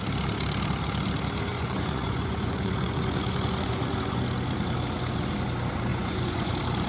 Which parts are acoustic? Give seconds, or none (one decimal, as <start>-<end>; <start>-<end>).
0.0-1.5; 4.2-5.9; 6.5-6.9